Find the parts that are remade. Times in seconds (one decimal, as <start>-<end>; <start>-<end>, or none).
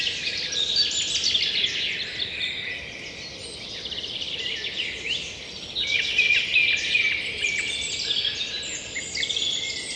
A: none